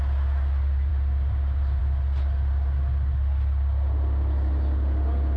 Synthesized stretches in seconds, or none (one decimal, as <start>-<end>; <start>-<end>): none